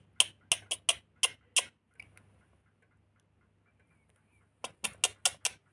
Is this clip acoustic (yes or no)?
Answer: yes